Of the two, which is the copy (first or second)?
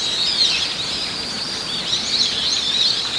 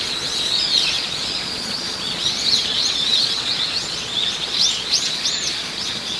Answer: second